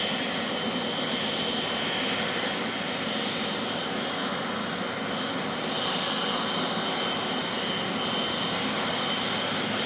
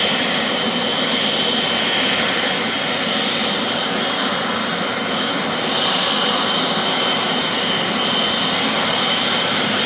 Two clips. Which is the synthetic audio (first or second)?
second